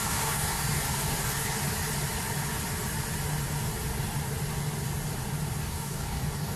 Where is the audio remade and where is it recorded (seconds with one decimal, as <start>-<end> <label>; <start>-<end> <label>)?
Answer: 0.0-1.6 remade; 1.6-5.6 recorded; 5.6-6.6 remade